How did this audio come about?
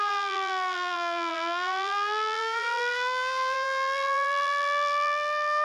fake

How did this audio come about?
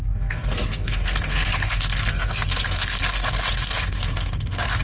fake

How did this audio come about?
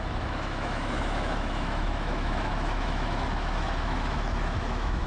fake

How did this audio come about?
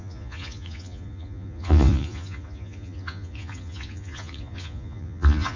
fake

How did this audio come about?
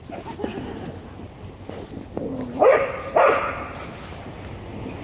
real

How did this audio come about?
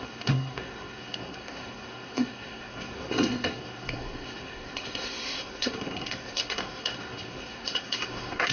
fake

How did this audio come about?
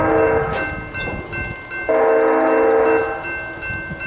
real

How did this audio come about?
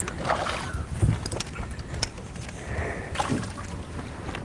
real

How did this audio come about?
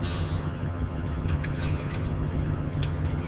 fake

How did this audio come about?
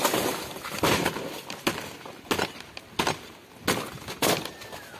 real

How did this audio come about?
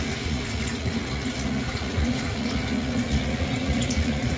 fake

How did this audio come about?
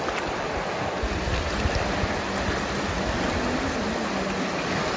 real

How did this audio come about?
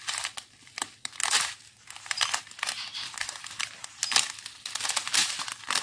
real